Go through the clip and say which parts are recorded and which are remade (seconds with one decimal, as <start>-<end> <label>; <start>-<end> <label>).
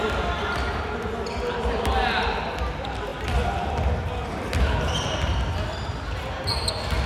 0.0-7.1 recorded